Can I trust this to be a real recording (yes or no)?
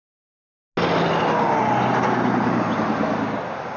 yes